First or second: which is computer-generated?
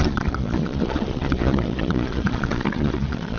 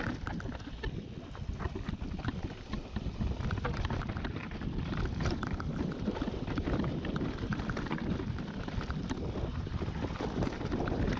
first